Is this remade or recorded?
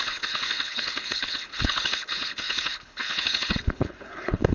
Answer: remade